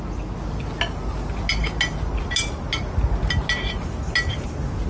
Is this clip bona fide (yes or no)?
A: yes